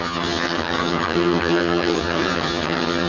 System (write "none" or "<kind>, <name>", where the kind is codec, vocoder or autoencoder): vocoder, HiFi-GAN